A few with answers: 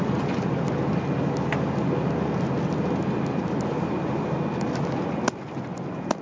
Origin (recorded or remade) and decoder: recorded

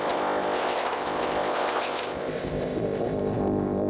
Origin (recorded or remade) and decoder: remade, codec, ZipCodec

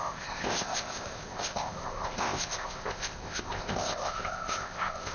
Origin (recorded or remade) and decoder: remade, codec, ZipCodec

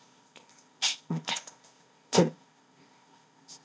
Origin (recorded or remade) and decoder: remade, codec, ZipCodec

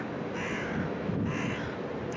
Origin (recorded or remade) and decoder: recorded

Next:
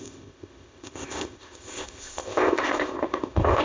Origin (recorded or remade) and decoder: remade, codec, ZipCodec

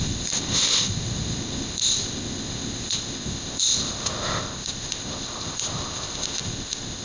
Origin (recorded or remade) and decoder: remade, codec, ZipCodec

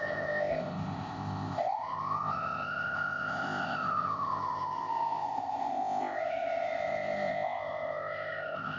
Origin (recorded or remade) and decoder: remade, codec, ZipCodec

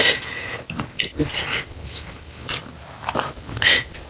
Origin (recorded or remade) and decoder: recorded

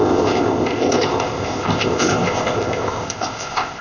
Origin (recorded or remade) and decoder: remade, codec, ZipCodec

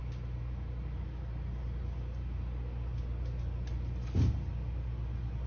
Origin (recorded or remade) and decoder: recorded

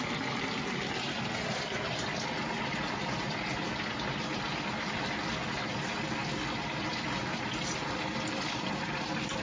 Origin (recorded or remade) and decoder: recorded